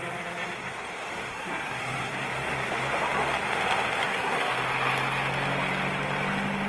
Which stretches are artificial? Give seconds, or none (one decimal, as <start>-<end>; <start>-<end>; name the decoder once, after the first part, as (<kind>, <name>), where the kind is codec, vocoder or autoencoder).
1.3-2.1 (codec, SNAC); 4.0-4.5